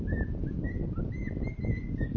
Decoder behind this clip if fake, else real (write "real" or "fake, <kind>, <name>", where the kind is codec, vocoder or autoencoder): real